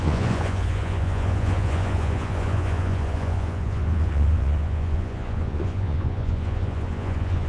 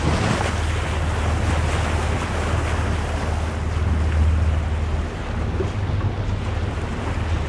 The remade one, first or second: first